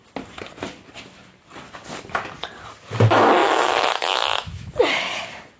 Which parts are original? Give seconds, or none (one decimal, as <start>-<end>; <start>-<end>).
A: 0.0-3.4; 4.7-5.6

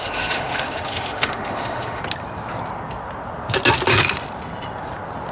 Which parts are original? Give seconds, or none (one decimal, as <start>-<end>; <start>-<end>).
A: 2.0-5.3